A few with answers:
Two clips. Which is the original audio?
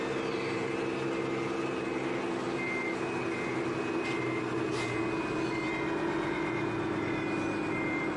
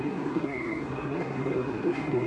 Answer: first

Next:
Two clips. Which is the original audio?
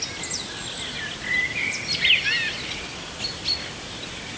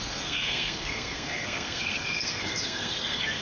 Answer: first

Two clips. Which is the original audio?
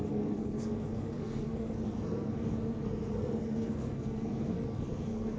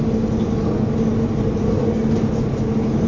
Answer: second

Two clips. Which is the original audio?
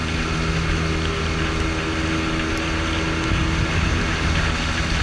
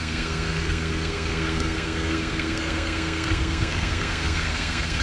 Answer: first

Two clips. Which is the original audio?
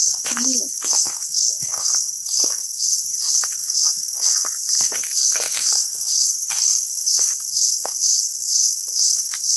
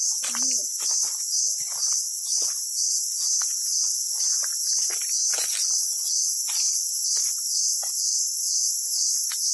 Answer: second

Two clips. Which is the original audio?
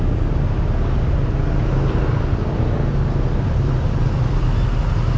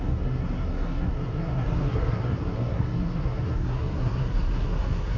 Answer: first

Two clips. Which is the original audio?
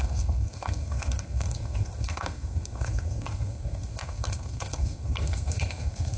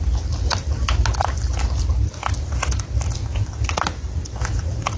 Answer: second